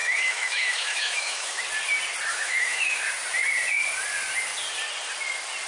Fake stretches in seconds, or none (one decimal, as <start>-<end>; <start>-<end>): 0.0-1.6; 2.3-3.0